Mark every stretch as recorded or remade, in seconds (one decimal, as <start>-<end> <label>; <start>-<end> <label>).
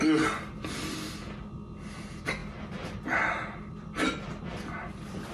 0.0-5.3 recorded